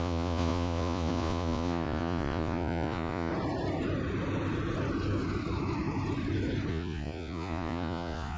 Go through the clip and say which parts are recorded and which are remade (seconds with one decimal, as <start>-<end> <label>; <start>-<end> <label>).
0.0-3.3 remade; 3.3-6.7 recorded; 6.7-8.4 remade